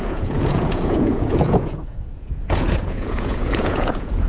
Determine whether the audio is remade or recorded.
remade